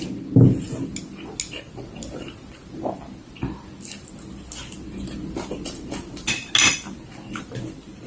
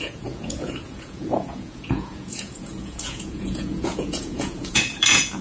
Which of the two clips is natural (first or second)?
first